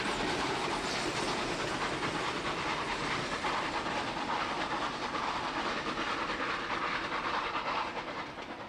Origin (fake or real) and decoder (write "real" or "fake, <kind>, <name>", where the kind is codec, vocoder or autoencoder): real